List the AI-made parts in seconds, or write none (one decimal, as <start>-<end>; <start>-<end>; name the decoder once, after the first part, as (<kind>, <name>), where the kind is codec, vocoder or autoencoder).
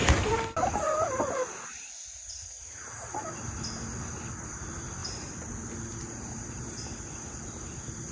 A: none